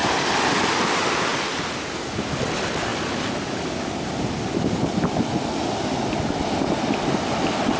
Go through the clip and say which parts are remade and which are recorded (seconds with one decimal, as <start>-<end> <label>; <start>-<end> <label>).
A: 0.0-2.9 remade; 2.9-7.8 recorded